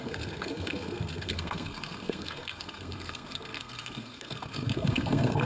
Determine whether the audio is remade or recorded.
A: remade